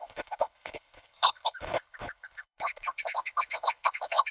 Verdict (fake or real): fake